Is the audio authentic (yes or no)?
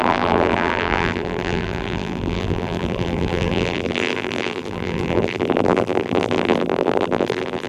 no